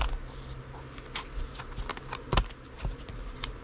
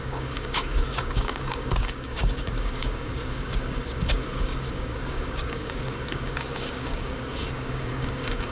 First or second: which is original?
first